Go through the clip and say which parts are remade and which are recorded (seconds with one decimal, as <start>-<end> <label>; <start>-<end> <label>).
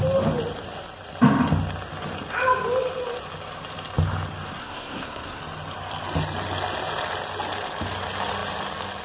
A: 0.0-4.6 recorded; 4.6-5.4 remade; 5.4-9.0 recorded